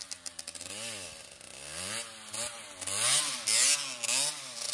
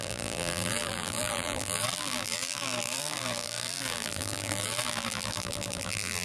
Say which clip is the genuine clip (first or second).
first